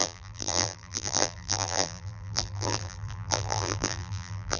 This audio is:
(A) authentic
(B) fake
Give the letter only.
B